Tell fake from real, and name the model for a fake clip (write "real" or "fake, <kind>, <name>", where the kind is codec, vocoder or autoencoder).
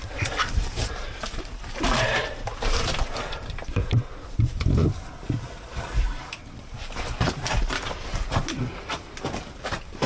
fake, vocoder, BigVGAN v2